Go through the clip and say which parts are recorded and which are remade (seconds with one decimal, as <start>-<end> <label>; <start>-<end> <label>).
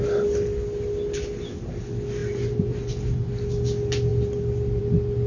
0.0-2.2 recorded; 2.2-3.3 remade; 3.3-5.3 recorded